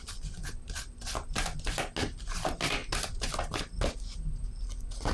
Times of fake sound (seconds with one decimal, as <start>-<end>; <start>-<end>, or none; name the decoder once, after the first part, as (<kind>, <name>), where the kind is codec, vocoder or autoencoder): none